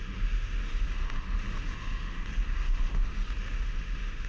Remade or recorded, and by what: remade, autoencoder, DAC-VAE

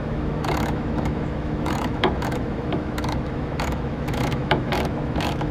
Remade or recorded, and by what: remade, autoencoder, DAC-VAE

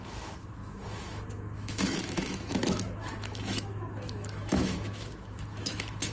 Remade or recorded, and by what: remade, autoencoder, DAC-VAE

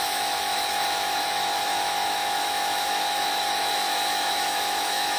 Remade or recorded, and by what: remade, autoencoder, DAC-VAE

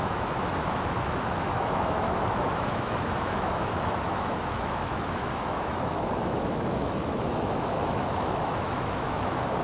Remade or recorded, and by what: remade, autoencoder, DAC-VAE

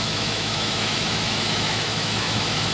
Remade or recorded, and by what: remade, autoencoder, DAC-VAE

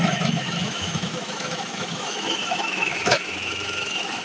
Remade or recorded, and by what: remade, autoencoder, DAC-VAE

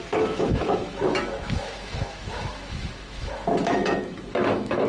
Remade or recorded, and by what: remade, autoencoder, DAC-VAE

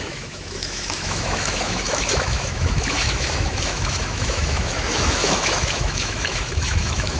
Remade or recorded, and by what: remade, autoencoder, DAC-VAE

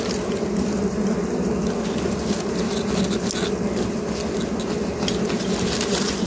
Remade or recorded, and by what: recorded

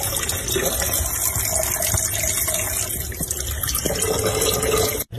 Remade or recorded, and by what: recorded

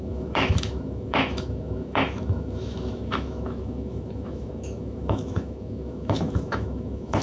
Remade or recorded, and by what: remade, autoencoder, DAC-VAE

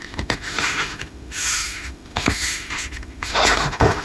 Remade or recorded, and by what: remade, autoencoder, DAC-VAE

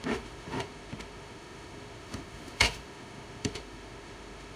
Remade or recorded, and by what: remade, autoencoder, DAC-VAE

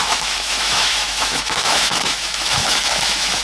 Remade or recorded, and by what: remade, autoencoder, DAC-VAE